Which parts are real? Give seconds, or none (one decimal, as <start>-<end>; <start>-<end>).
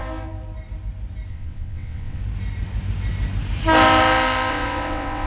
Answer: 0.0-1.3; 2.2-4.5